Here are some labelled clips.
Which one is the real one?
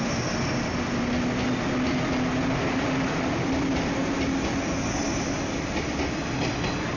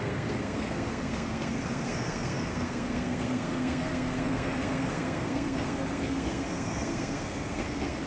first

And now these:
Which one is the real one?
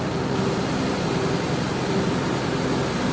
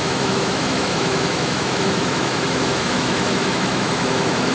first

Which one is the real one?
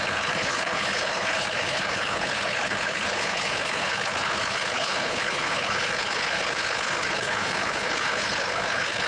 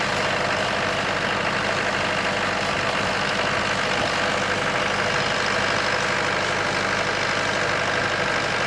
second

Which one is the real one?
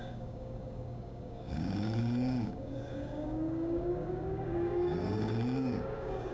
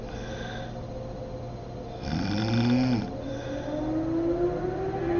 second